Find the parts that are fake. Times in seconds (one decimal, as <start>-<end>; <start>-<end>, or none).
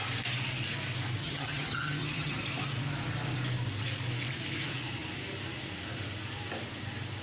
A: 1.2-2.4